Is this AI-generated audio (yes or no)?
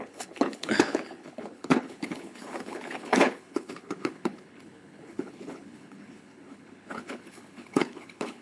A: yes